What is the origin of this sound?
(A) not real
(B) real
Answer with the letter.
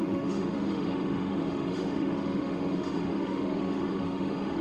A